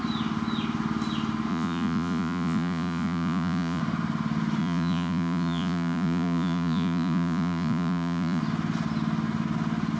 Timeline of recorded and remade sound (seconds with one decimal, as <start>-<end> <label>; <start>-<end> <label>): 0.0-1.5 recorded; 1.5-3.8 remade; 3.8-4.6 recorded; 4.6-8.4 remade; 8.4-10.0 recorded